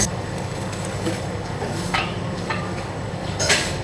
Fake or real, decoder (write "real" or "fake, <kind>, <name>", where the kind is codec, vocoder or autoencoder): fake, codec, DAC